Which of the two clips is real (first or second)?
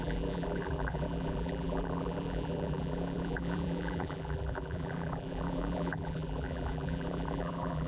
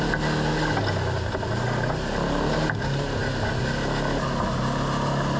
second